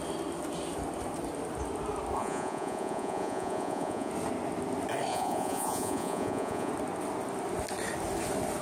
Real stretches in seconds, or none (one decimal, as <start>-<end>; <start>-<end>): 0.0-2.2; 4.1-5.1; 6.7-8.6